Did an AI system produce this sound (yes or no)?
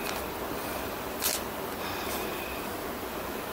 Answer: no